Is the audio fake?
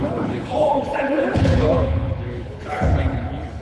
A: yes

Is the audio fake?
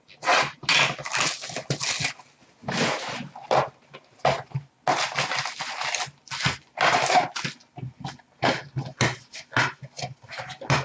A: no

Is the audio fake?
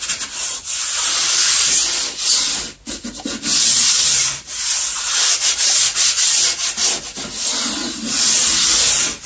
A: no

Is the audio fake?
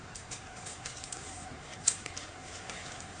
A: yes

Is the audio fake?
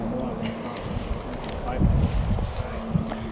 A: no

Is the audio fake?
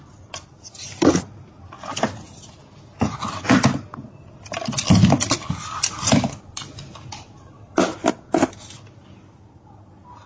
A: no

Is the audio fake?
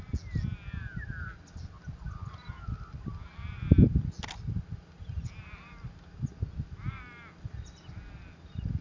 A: no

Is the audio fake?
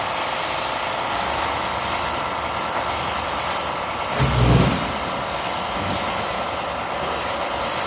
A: no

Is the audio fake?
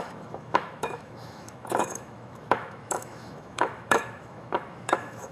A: yes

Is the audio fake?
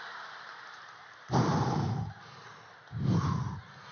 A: no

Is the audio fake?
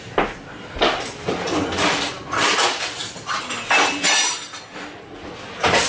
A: no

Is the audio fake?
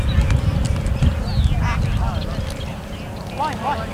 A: no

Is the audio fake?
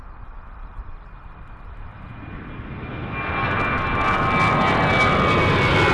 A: no